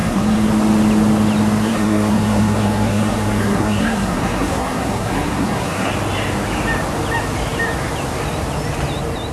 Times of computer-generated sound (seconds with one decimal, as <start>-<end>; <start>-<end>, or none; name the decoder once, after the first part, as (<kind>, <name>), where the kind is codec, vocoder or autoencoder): 0.0-0.5 (codec, SNAC); 1.6-5.9